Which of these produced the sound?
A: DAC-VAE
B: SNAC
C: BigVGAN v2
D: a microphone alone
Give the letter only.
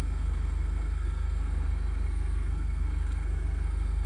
B